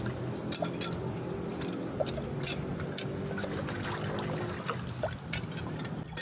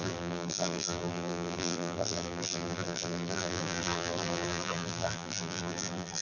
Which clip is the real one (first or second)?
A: first